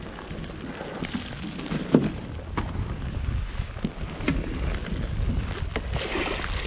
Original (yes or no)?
yes